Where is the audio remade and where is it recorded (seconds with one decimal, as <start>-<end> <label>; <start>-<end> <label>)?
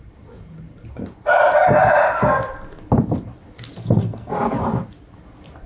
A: 0.0-3.8 recorded; 3.8-4.3 remade; 4.3-5.7 recorded